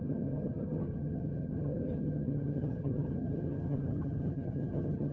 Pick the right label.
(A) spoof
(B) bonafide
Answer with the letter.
A